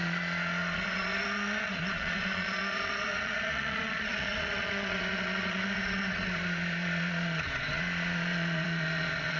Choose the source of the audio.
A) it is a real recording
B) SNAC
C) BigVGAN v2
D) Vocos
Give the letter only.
D